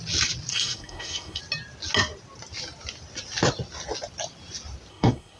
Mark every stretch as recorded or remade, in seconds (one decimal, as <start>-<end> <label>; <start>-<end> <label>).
0.0-0.5 recorded; 0.5-1.4 remade; 1.4-4.9 recorded; 4.9-5.4 remade

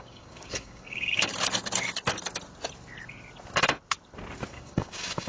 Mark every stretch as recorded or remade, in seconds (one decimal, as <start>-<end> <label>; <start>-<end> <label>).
0.0-1.3 remade; 1.3-4.5 recorded; 4.5-5.3 remade